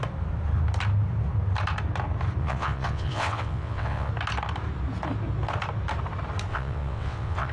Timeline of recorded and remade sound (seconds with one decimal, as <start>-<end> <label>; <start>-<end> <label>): 0.0-2.4 recorded; 2.4-4.1 remade; 4.1-6.5 recorded; 6.5-7.5 remade